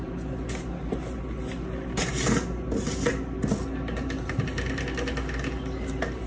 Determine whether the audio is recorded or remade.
recorded